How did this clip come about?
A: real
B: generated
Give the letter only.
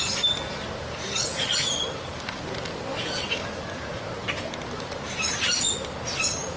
A